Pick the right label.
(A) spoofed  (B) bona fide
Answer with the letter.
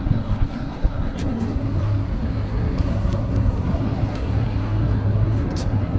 A